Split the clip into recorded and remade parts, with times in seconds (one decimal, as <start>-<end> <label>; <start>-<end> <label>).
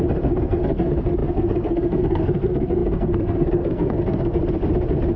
0.0-4.4 remade; 4.4-5.2 recorded